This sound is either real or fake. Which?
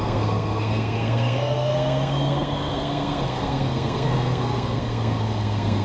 fake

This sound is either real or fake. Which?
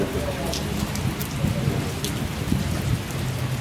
real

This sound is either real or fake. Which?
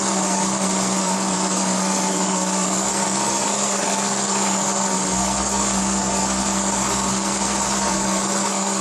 fake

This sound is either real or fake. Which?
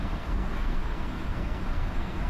fake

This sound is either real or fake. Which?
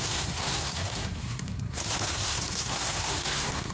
fake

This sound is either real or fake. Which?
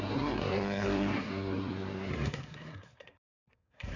fake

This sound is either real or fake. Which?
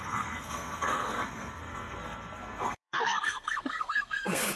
fake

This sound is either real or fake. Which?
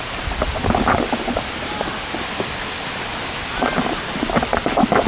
real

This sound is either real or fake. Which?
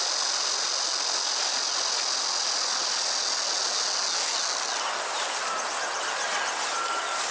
real